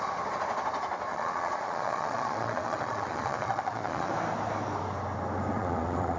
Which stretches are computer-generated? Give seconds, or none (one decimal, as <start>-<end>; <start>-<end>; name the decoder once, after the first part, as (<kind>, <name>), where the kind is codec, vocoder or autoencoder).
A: 1.1-4.1 (vocoder, Vocos); 5.5-6.2

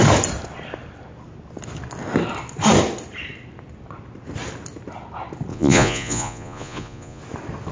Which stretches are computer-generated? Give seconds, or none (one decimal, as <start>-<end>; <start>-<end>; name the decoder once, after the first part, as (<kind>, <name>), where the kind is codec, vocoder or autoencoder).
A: 5.5-7.2 (vocoder, Vocos)

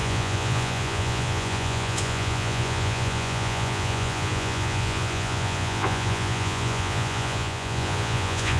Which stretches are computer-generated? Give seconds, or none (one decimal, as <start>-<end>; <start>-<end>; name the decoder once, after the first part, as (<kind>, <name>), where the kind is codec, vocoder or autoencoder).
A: 0.0-8.6 (vocoder, Vocos)

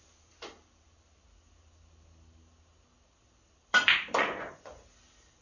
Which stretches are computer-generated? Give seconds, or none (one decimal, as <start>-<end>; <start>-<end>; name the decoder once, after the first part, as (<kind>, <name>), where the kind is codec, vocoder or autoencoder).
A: 4.2-4.8 (vocoder, Vocos)

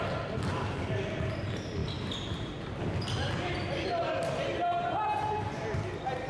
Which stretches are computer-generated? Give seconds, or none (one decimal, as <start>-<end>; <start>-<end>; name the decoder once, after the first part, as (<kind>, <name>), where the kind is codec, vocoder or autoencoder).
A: none

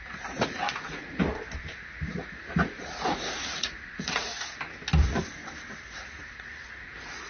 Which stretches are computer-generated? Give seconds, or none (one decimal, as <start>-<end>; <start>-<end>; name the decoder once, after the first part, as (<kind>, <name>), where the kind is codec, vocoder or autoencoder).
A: 0.0-1.2 (vocoder, Vocos); 2.1-4.3; 6.0-7.3

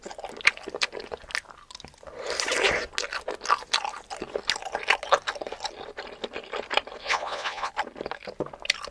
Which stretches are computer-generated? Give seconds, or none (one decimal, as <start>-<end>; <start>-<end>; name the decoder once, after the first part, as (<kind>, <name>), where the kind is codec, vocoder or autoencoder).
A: 7.0-7.7 (vocoder, Vocos)